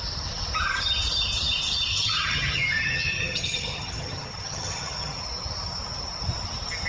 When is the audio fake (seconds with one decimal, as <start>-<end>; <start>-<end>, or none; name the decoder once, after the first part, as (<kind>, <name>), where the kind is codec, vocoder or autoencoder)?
1.9-5.2 (vocoder, HiFi-GAN)